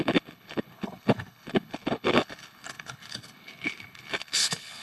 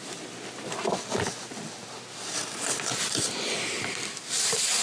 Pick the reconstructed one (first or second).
first